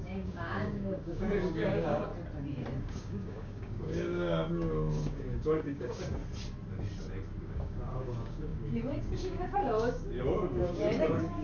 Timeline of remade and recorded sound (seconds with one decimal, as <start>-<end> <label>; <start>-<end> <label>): 0.0-2.1 remade; 2.1-2.8 recorded; 2.8-6.2 remade; 6.2-7.4 recorded; 7.4-11.4 remade